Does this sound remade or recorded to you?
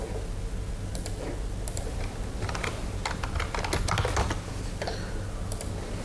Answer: recorded